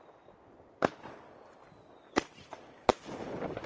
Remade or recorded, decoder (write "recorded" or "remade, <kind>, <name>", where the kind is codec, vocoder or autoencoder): recorded